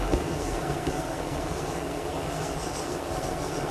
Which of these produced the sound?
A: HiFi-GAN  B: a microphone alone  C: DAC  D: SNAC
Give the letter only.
D